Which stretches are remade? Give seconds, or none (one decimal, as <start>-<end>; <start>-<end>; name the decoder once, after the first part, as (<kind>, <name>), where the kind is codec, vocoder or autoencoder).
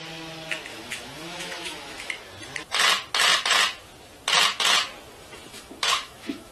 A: 0.7-2.1 (autoencoder, DAC-VAE); 5.2-6.5